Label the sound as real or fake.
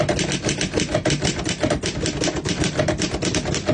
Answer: real